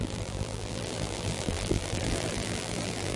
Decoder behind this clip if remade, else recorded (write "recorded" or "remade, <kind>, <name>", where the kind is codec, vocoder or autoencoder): remade, vocoder, BigVGAN v2